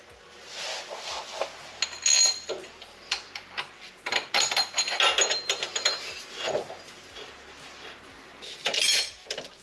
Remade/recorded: recorded